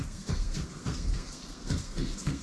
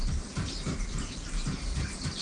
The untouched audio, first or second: second